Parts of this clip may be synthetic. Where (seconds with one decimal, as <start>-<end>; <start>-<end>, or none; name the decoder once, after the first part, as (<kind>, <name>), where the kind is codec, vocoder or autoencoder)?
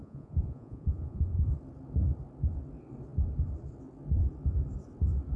0.0-1.5 (vocoder, Vocos)